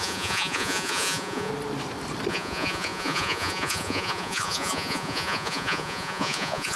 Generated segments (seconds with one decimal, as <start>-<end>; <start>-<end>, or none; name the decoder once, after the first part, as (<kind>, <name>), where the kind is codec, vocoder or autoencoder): 0.0-1.5 (vocoder, Vocos); 2.3-6.8